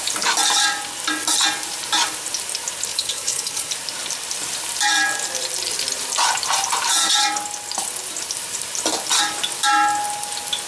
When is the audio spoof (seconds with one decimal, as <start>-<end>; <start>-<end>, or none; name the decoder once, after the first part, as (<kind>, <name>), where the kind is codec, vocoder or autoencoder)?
2.9-3.7 (codec, HILCodec)